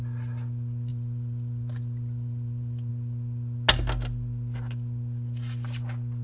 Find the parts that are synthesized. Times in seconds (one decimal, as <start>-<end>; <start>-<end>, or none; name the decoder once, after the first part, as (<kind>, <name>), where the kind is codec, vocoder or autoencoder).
0.9-2.9 (vocoder, BigVGAN v2)